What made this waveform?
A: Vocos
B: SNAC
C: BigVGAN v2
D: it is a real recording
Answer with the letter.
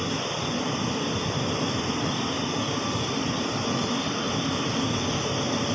D